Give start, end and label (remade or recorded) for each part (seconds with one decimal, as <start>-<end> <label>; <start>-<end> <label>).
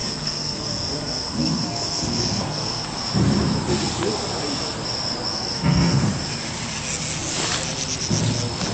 0.0-3.0 remade; 3.0-5.3 recorded; 5.3-6.1 remade; 6.1-8.7 recorded